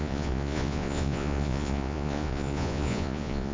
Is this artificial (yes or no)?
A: yes